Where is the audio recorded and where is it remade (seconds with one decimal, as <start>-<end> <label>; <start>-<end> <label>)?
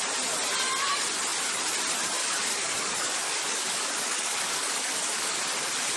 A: 0.0-2.2 recorded; 2.2-5.4 remade; 5.4-6.0 recorded